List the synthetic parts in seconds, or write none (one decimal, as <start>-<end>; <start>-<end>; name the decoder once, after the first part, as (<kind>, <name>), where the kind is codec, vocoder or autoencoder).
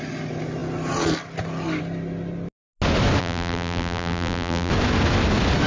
3.2-4.7 (vocoder, BigVGAN v2)